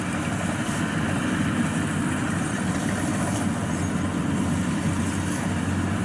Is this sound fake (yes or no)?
no